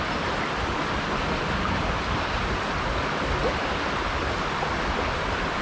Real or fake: real